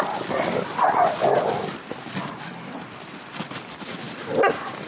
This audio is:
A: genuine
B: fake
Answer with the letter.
A